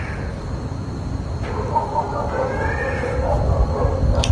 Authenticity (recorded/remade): recorded